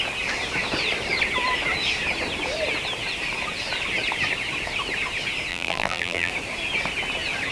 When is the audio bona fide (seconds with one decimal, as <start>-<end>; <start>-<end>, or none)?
0.0-5.5; 6.3-7.5